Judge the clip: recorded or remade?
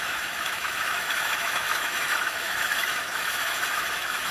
remade